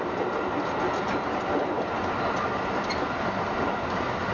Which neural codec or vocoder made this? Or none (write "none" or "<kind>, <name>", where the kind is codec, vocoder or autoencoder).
none